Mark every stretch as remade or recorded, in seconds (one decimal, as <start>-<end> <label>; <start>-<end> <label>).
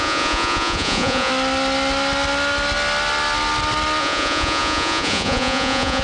0.0-1.3 remade; 1.3-4.0 recorded; 4.0-6.0 remade